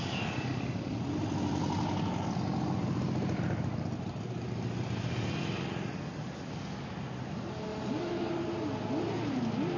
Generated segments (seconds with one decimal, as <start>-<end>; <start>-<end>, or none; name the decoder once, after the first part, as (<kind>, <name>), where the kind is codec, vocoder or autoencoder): none